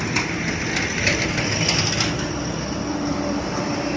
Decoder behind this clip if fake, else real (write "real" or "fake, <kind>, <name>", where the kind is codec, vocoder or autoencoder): real